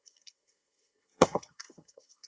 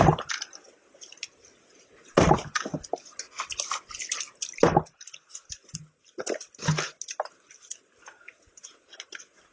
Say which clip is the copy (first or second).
first